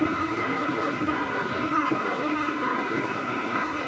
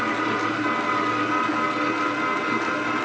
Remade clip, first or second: first